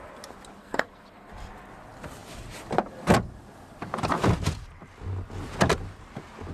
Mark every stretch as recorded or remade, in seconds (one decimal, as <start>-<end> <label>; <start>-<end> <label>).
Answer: 0.0-0.6 recorded; 0.6-1.3 remade; 1.3-6.5 recorded